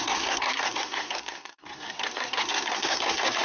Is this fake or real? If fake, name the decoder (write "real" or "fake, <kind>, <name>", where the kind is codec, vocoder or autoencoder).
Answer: fake, codec, SNAC